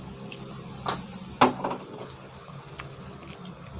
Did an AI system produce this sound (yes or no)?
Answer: no